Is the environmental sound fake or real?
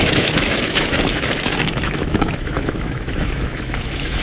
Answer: fake